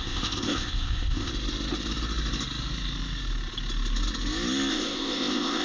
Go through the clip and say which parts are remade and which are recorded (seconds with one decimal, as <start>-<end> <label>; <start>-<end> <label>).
0.0-1.3 remade; 1.3-4.7 recorded; 4.7-5.6 remade